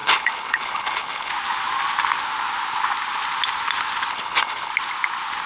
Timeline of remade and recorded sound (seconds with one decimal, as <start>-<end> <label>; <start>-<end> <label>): 0.0-1.3 remade; 1.3-4.1 recorded; 4.1-4.7 remade; 4.7-5.5 recorded